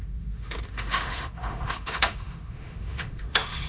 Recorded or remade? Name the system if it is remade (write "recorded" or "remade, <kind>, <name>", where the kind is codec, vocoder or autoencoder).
remade, autoencoder, DAC-VAE